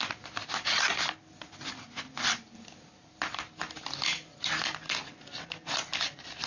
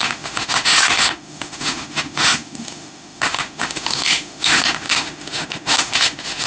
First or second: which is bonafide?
first